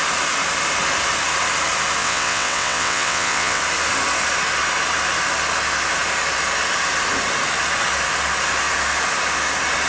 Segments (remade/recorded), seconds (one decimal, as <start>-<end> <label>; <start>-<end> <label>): 0.0-2.0 recorded; 2.0-3.6 remade; 3.6-9.9 recorded